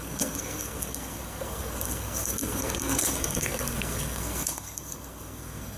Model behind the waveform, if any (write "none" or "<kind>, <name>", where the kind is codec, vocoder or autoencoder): codec, SNAC